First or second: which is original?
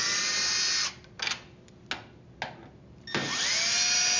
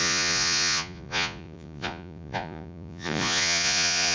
first